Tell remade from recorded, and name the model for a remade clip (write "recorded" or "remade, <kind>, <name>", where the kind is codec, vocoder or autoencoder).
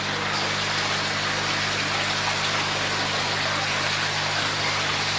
recorded